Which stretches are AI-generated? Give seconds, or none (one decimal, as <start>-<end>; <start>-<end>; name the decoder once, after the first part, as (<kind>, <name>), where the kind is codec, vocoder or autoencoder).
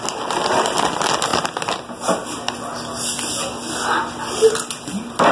none